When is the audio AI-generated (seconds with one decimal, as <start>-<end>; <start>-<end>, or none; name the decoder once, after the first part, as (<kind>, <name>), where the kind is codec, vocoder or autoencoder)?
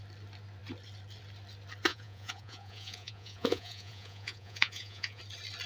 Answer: 1.9-5.2 (vocoder, Vocos)